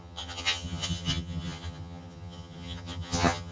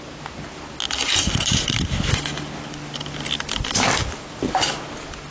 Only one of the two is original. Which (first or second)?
second